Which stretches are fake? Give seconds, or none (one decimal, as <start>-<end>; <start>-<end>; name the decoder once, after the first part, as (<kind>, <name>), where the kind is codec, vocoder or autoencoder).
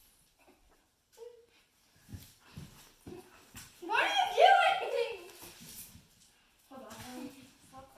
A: 0.0-2.1 (vocoder, BigVGAN v2); 5.6-7.1